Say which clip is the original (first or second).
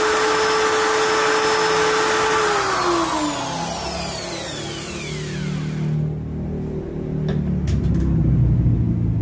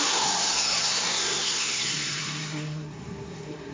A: first